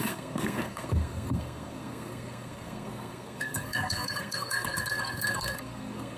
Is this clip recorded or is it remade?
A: remade